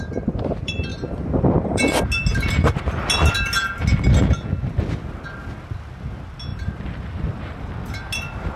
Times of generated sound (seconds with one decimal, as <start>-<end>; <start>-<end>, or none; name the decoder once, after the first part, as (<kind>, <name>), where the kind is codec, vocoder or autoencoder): 0.9-1.8 (vocoder, BigVGAN v2); 2.3-2.9; 6.5-7.7